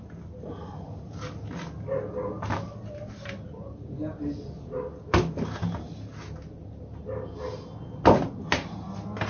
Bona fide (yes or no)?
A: yes